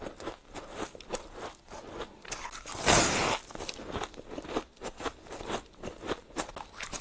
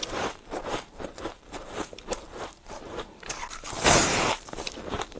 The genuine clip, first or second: first